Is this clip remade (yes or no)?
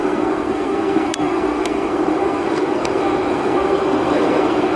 yes